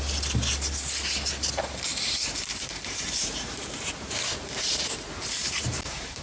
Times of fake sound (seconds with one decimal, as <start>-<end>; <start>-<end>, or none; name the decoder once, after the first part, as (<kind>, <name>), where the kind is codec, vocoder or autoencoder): 1.9-3.9 (vocoder, BigVGAN v2); 5.4-6.2